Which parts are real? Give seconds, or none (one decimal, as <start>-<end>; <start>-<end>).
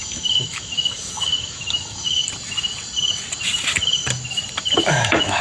2.2-4.9